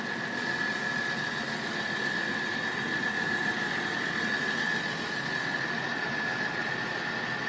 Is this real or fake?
real